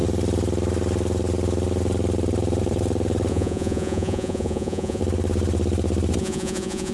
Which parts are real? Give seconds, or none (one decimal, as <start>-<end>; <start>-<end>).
0.0-3.3; 5.0-6.2